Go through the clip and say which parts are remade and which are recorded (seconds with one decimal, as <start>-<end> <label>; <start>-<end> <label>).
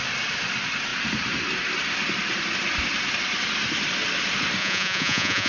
0.0-4.6 recorded; 4.6-5.5 remade